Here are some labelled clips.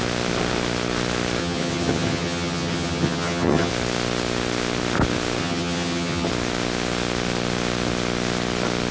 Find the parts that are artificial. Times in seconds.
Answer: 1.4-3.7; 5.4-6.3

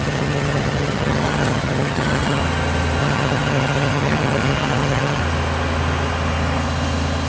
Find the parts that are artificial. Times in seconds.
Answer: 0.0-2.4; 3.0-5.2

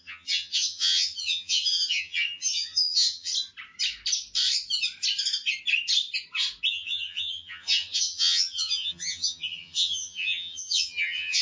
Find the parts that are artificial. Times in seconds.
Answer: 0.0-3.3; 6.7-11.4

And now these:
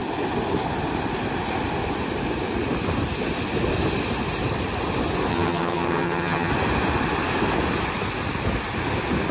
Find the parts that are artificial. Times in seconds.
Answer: 5.3-6.5

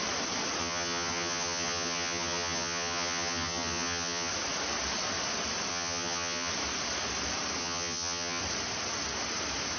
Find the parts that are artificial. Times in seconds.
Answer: 0.6-4.3; 5.7-6.5; 7.6-8.4

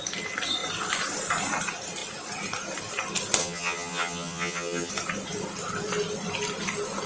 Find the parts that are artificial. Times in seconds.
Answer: 3.4-4.9

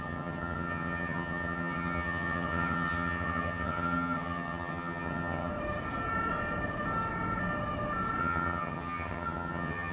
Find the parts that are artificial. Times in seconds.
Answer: 0.0-5.5; 8.2-9.9